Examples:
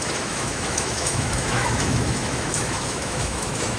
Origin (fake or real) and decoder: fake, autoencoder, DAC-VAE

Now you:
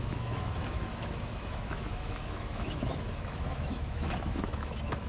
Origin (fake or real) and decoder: fake, autoencoder, DAC-VAE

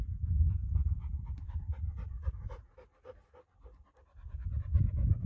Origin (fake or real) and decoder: real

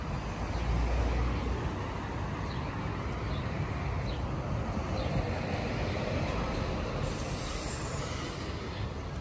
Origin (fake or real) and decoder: real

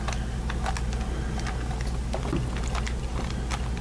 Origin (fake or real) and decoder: real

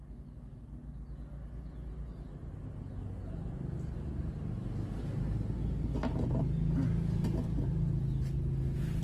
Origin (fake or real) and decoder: real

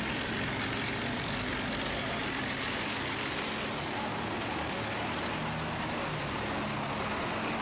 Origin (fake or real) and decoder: real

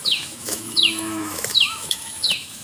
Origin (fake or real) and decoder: fake, autoencoder, DAC-VAE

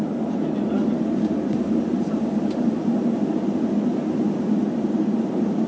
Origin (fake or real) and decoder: real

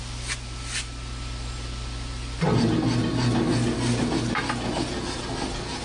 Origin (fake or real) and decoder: real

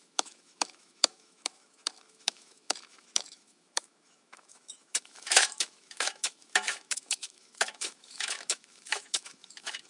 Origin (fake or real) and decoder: fake, autoencoder, DAC-VAE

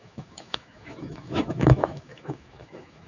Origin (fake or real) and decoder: fake, autoencoder, DAC-VAE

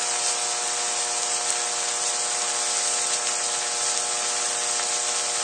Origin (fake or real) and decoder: real